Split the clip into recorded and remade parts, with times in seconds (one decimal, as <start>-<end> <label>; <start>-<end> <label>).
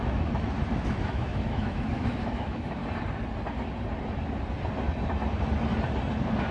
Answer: 0.0-2.8 remade; 2.8-6.5 recorded